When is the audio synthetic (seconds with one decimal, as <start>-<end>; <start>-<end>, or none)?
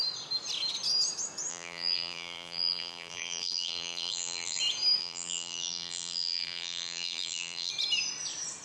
1.5-4.6; 5.0-7.7